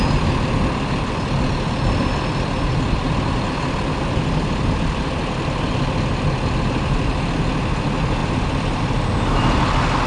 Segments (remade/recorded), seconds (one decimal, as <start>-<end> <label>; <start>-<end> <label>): 0.0-8.2 recorded; 8.2-8.8 remade; 8.8-10.1 recorded

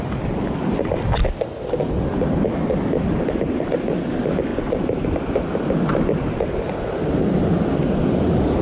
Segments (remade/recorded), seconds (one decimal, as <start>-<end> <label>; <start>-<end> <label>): 0.0-8.6 recorded

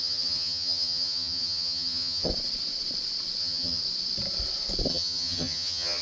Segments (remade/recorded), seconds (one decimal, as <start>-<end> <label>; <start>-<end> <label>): 0.0-2.3 remade; 2.3-3.4 recorded; 3.4-3.8 remade; 3.8-4.9 recorded; 4.9-6.0 remade

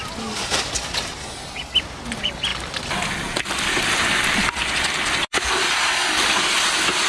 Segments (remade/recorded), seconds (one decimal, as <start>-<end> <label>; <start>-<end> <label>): 0.0-7.1 recorded